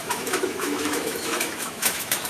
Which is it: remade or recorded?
remade